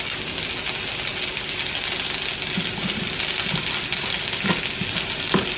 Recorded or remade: recorded